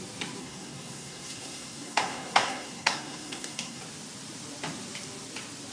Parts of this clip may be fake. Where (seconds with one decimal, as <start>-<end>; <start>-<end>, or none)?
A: 0.4-3.8